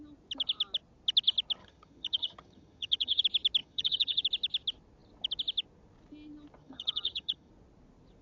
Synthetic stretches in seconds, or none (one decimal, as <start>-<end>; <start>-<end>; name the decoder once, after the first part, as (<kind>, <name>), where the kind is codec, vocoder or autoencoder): 1.6-3.2 (vocoder, HiFi-GAN); 3.6-4.2; 6.6-7.5